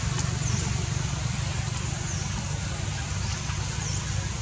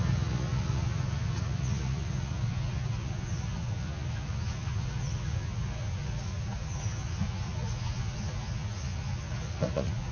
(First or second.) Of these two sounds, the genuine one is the first